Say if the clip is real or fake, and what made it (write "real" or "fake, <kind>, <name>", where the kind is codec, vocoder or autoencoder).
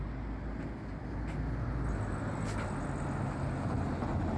real